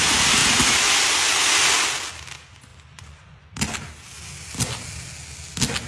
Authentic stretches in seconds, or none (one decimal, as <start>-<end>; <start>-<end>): 0.0-2.7; 3.5-5.9